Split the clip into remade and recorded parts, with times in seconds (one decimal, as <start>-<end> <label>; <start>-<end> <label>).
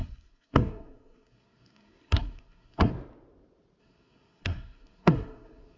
0.0-2.9 remade; 2.9-3.8 recorded; 3.8-5.8 remade